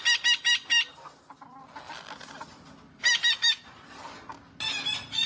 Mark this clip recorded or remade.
recorded